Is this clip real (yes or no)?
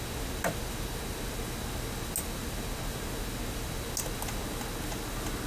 yes